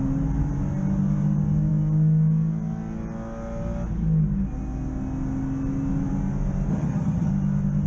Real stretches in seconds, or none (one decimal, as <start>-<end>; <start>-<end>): 0.0-6.7; 7.3-7.9